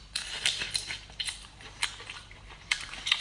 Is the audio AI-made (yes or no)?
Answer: yes